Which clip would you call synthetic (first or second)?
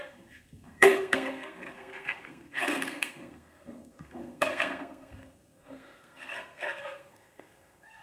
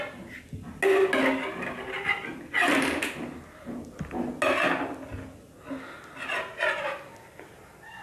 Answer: first